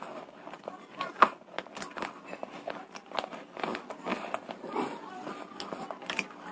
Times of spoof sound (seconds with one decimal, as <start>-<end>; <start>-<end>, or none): none